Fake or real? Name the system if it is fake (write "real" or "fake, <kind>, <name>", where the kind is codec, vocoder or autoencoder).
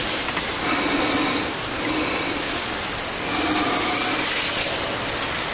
real